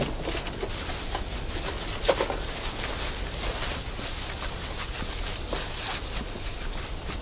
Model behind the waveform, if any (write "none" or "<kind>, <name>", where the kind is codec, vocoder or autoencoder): none